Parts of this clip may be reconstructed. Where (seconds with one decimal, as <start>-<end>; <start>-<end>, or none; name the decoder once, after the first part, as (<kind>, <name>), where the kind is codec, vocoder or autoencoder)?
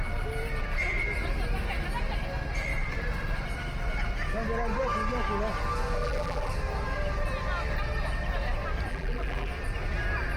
6.0-6.5 (vocoder, BigVGAN v2); 8.9-9.5